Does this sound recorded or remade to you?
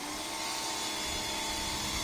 recorded